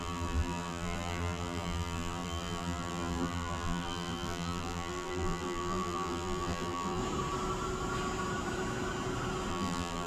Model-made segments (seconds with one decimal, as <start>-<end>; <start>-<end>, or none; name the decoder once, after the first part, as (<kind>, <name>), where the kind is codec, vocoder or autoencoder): 0.0-7.0 (vocoder, BigVGAN v2); 9.5-10.1